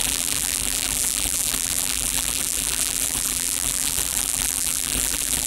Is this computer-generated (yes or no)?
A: yes